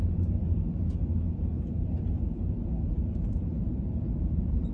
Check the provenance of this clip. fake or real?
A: fake